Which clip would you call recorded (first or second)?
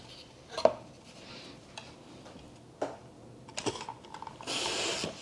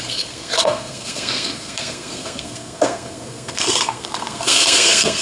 first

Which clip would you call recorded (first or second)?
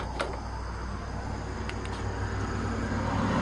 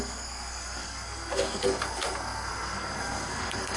first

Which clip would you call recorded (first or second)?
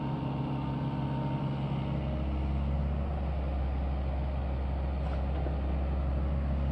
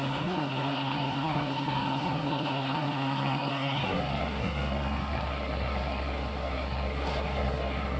first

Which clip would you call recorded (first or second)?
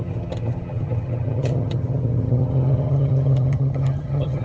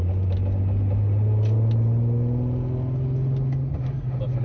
second